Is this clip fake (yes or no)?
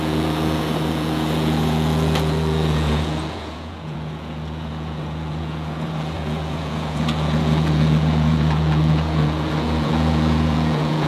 yes